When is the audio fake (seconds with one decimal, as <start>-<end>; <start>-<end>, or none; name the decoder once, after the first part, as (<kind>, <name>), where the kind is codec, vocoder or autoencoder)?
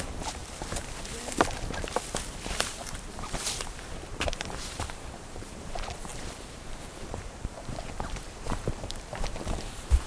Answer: 0.0-0.4 (vocoder, BigVGAN v2); 2.2-10.1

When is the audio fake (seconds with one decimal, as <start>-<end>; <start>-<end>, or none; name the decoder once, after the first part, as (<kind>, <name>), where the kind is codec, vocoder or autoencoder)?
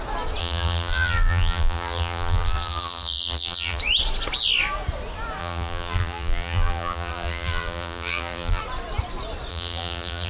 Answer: 0.4-3.8 (vocoder, BigVGAN v2); 5.4-8.6; 9.5-10.3